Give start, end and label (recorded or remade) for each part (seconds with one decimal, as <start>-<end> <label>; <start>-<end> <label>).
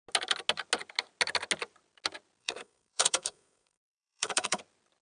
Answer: 0.0-2.4 recorded; 2.4-4.6 remade; 4.6-5.0 recorded